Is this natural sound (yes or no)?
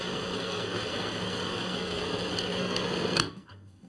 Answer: no